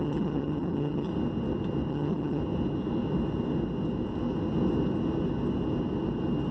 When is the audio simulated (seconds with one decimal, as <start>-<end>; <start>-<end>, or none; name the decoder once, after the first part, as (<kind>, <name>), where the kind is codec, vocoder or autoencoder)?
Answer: 0.0-1.1 (vocoder, HiFi-GAN); 1.9-2.4